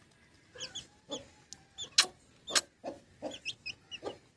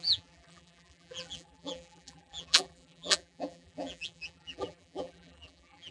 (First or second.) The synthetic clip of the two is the second